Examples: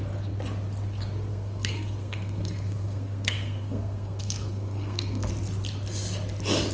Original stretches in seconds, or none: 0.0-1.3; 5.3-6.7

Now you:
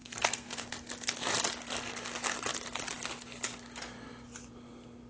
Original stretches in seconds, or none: 0.6-5.1

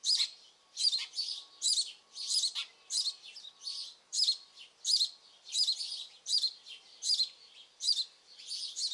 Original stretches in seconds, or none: 3.0-4.1; 8.4-8.9

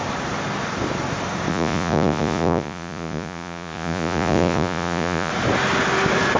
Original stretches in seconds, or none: 0.0-1.5; 5.3-6.4